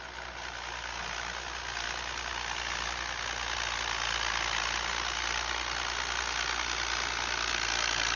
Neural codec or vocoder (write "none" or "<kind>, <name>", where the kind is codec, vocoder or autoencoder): none